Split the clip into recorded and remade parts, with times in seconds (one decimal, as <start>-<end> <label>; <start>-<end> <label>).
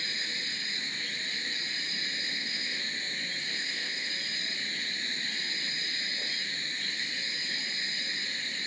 0.0-2.3 recorded; 2.3-2.8 remade; 2.8-3.5 recorded; 3.5-4.1 remade; 4.1-8.7 recorded